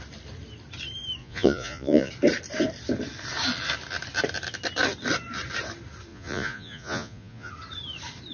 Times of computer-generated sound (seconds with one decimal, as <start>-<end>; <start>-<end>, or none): 1.2-2.1; 6.1-7.5